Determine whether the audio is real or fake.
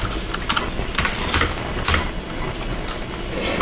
real